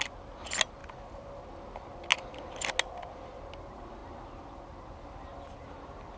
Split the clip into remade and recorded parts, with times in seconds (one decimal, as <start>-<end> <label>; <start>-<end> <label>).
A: 0.0-6.2 recorded